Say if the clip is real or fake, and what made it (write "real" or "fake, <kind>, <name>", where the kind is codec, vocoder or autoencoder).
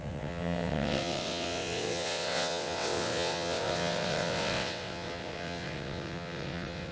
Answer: fake, vocoder, WaveNeXt